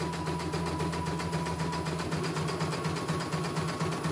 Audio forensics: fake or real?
real